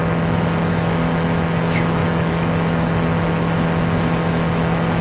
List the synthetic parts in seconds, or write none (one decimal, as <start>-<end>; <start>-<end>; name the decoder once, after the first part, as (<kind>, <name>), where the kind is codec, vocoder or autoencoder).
0.0-5.0 (autoencoder, DAC-VAE)